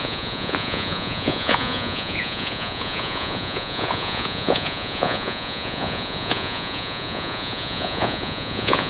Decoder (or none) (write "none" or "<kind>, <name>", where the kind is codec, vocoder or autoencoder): vocoder, Vocos